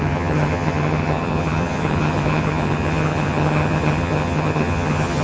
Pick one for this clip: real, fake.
fake